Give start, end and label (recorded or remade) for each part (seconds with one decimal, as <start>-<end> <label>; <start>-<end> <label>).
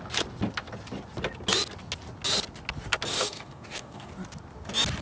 0.0-3.1 recorded; 3.1-4.1 remade; 4.1-5.0 recorded